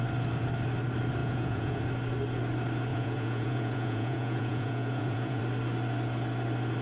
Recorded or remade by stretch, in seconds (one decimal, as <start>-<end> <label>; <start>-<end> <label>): 0.0-1.2 recorded; 1.2-1.8 remade; 1.8-2.9 recorded; 2.9-5.4 remade; 5.4-6.8 recorded